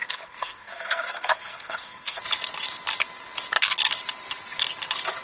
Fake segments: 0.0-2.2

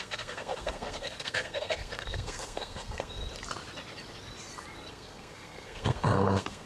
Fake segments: 0.0-3.2; 4.9-6.7

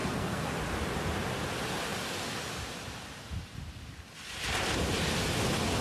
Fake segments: 0.0-0.5

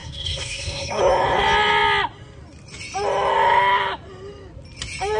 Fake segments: 0.0-1.0